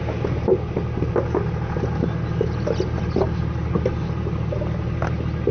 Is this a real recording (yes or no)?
yes